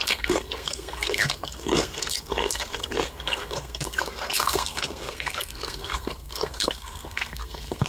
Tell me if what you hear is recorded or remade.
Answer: remade